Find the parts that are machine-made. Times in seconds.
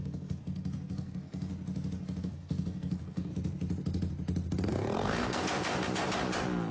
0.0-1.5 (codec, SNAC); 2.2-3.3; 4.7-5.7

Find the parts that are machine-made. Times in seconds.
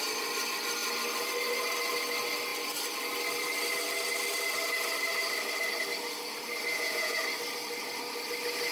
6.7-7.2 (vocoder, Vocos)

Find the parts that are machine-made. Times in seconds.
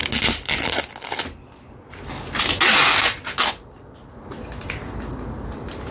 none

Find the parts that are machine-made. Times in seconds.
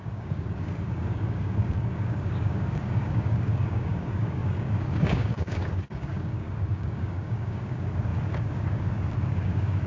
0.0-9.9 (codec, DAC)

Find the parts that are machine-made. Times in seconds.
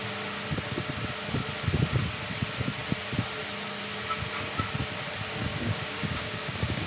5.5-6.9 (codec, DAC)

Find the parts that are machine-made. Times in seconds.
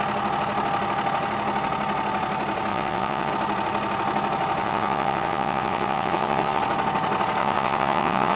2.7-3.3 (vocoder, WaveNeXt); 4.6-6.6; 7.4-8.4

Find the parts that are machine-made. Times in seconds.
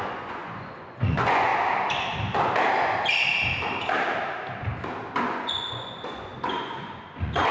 0.0-1.5 (vocoder, Vocos); 5.1-7.5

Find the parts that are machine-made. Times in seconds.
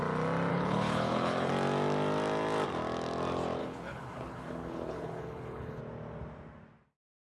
0.5-1.5 (codec, HILCodec); 3.6-5.8